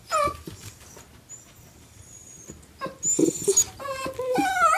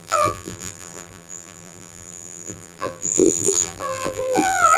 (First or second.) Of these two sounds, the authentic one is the first